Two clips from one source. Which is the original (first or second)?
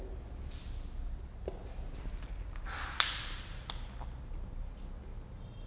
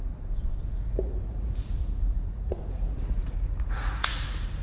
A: first